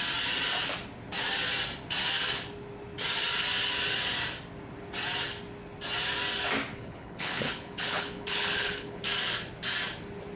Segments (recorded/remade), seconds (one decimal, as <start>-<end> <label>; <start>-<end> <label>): 0.0-6.7 recorded; 6.7-9.0 remade; 9.0-10.4 recorded